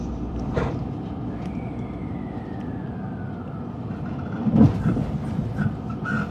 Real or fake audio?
fake